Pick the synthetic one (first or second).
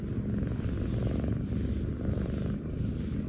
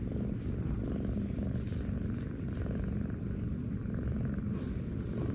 second